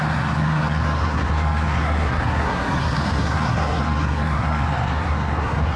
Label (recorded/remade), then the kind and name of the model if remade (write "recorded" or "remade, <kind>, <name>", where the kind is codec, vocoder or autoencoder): remade, codec, SNAC